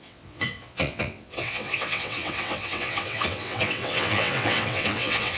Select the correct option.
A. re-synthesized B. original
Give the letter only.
A